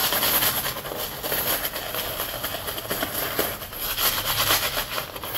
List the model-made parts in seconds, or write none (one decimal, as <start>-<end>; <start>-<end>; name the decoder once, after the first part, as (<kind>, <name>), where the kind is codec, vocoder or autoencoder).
none